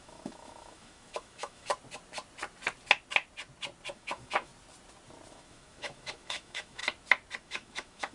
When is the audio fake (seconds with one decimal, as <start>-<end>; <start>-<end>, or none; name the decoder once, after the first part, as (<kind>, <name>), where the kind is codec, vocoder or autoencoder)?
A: 0.0-1.7 (autoencoder, DAC-VAE); 3.9-4.5; 5.3-6.8; 7.4-8.1